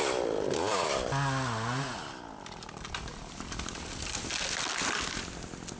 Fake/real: real